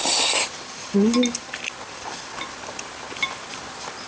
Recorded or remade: recorded